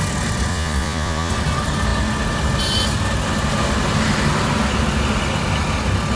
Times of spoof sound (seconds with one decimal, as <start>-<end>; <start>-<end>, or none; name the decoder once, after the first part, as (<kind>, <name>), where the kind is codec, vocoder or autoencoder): 0.5-1.3 (vocoder, Vocos)